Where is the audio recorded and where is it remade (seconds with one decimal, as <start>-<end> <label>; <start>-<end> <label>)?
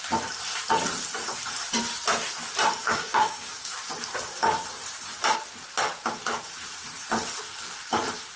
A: 0.0-2.8 recorded; 2.8-3.8 remade; 3.8-8.4 recorded